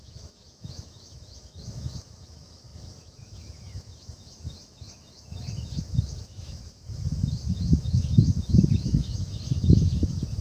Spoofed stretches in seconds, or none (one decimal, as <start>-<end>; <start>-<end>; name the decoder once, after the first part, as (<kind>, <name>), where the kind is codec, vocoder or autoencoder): 0.0-10.4 (autoencoder, DAC-VAE)